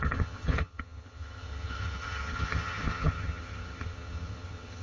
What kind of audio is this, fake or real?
fake